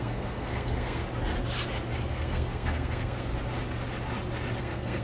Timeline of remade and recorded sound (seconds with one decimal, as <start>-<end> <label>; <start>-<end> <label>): 0.0-1.0 remade; 1.0-2.1 recorded; 2.1-3.3 remade; 3.3-4.6 recorded; 4.6-5.0 remade